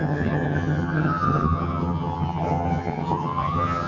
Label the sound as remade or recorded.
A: remade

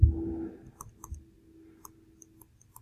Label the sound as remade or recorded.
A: recorded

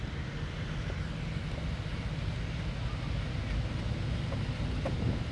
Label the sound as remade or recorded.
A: recorded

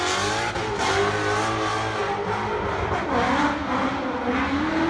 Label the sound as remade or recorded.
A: recorded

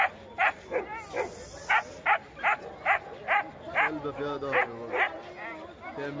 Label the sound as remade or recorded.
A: recorded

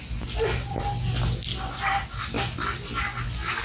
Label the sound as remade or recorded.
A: recorded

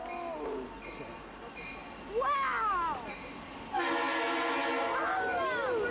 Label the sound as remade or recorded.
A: recorded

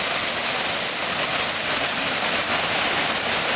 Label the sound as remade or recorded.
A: recorded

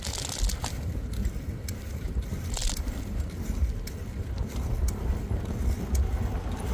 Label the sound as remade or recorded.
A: recorded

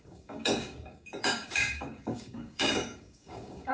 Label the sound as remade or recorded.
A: remade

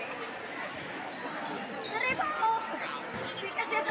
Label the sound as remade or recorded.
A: recorded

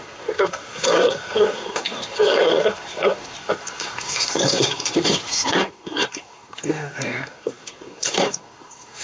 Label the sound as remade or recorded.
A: remade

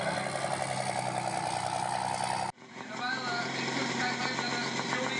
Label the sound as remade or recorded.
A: recorded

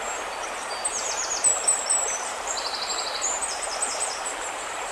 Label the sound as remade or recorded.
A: remade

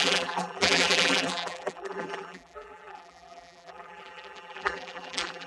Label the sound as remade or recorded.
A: remade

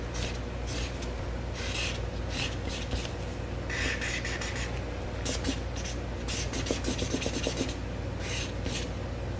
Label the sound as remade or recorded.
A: recorded